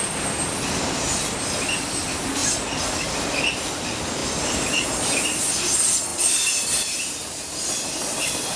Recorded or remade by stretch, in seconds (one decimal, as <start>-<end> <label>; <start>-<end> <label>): 0.0-8.6 recorded